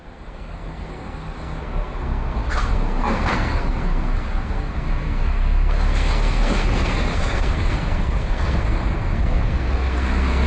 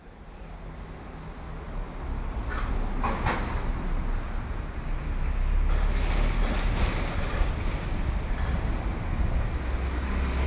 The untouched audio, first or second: second